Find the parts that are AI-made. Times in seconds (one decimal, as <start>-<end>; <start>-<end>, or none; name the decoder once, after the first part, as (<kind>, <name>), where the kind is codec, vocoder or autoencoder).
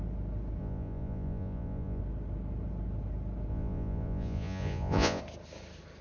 0.6-2.0 (vocoder, Vocos); 3.5-5.2